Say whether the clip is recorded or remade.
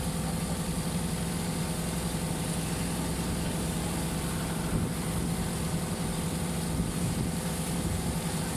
recorded